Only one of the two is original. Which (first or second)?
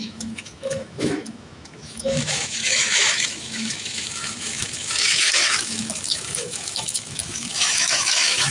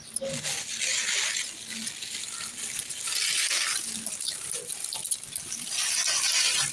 second